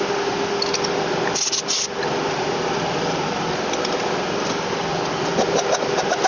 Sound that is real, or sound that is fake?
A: real